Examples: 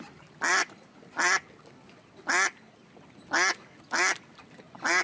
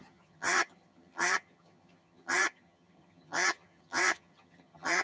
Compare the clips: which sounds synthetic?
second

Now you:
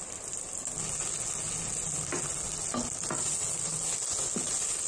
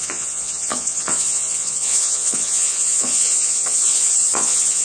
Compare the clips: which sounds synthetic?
second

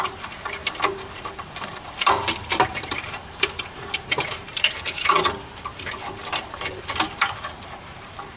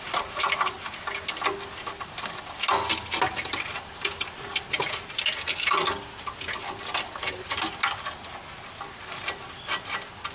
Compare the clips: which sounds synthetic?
first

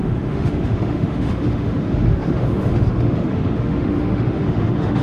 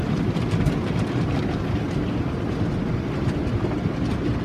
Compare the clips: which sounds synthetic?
first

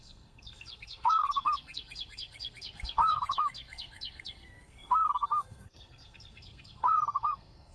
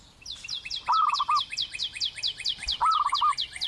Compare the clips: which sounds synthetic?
first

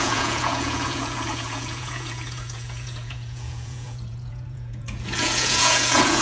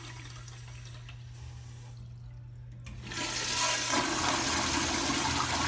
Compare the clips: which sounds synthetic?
first